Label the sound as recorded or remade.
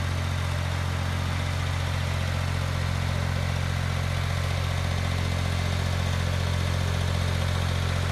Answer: recorded